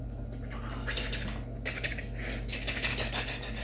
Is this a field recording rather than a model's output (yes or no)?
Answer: yes